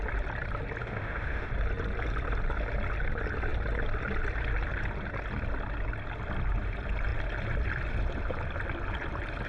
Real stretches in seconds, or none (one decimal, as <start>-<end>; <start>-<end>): 0.0-0.8; 1.5-9.5